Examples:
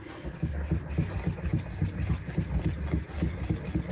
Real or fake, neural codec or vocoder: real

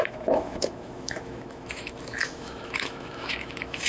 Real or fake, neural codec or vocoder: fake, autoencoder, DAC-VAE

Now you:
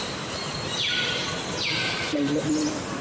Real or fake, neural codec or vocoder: real